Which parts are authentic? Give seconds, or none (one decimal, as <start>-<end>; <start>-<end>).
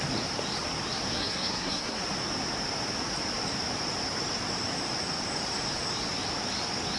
0.0-1.1; 2.0-7.0